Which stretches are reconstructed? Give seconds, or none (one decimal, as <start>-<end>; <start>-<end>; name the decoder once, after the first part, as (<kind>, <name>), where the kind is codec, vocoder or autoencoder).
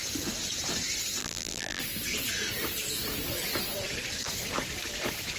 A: 1.2-1.8 (vocoder, BigVGAN v2)